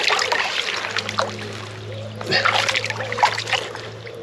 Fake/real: real